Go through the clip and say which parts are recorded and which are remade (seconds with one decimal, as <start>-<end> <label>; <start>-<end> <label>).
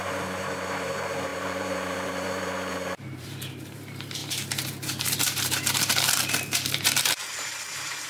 0.0-8.1 remade